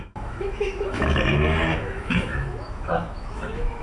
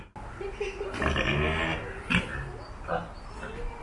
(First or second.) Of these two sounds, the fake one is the first